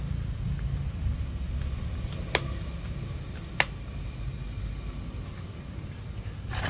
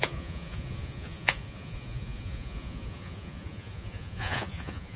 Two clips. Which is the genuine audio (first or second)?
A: first